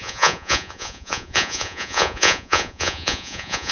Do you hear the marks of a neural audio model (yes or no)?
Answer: yes